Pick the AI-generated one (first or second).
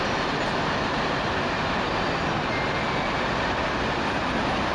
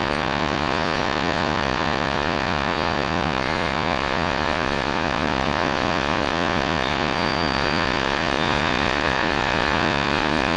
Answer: second